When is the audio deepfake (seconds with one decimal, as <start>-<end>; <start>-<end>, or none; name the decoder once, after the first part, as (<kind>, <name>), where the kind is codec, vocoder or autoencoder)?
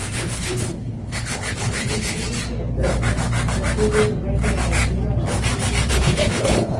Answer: 0.0-2.2 (codec, HILCodec); 5.9-6.8